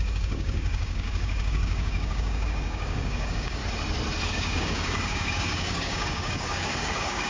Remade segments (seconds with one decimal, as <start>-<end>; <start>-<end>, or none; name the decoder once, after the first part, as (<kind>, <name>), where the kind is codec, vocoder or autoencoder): 0.0-3.6 (codec, DAC); 4.3-7.3